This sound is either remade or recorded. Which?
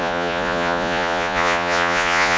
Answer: remade